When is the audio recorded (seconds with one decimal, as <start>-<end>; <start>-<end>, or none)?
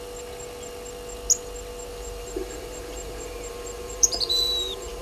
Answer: 0.0-1.9